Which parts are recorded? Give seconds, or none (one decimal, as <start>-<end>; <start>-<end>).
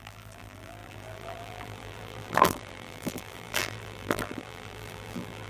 none